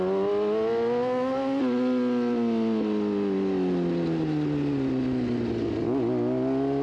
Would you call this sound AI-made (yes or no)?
no